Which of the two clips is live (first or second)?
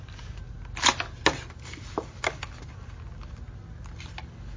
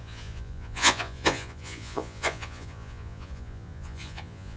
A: first